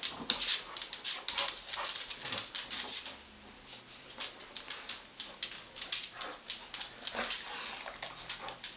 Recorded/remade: recorded